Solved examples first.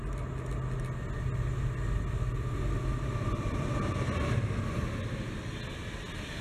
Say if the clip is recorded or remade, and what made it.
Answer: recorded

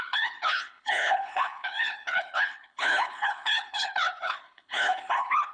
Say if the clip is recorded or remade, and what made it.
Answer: remade, codec, HILCodec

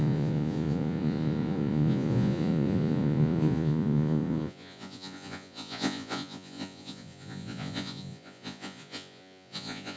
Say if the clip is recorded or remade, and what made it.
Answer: remade, vocoder, Vocos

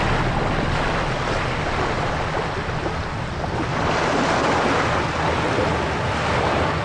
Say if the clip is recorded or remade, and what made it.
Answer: recorded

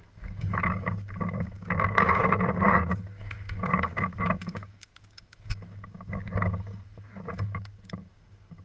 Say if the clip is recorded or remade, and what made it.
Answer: remade, codec, DAC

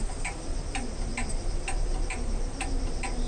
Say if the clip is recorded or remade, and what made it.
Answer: recorded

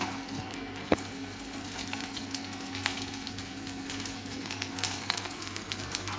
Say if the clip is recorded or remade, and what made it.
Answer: remade, codec, SNAC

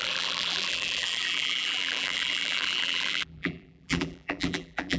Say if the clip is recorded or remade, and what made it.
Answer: remade, vocoder, BigVGAN v2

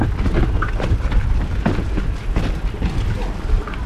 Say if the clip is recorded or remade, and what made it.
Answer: recorded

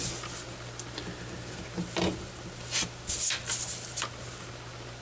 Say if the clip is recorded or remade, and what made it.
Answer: recorded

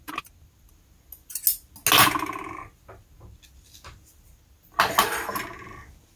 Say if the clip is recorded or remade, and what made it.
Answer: recorded